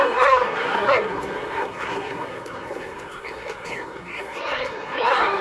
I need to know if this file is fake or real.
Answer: fake